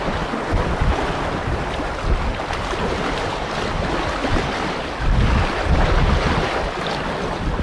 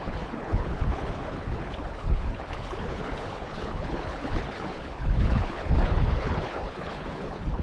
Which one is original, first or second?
first